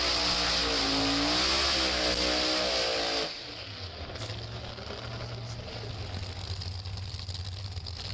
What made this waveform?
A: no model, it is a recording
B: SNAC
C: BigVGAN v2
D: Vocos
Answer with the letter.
A